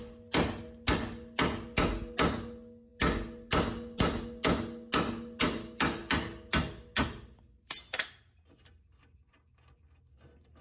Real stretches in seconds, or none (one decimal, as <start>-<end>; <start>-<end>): 0.0-10.6